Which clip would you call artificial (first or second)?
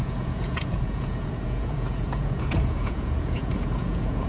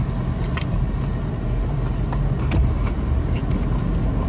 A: first